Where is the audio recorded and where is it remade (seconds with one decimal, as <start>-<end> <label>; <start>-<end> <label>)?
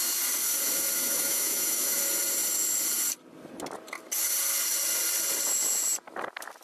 0.0-1.0 recorded; 1.0-2.0 remade; 2.0-6.6 recorded